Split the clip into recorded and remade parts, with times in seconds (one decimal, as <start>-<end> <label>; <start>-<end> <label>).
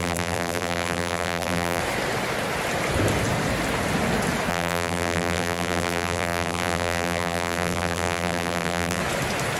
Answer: 0.0-1.8 remade; 1.8-4.5 recorded; 4.5-9.0 remade; 9.0-9.6 recorded